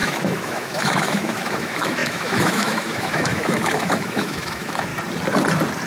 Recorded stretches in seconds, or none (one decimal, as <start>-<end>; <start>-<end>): 4.9-5.9